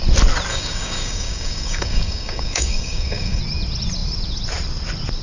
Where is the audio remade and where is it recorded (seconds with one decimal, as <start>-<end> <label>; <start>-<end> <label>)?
0.0-0.5 recorded; 0.5-3.4 remade; 3.4-5.2 recorded